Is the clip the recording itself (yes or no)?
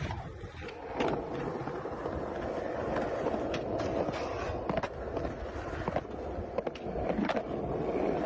yes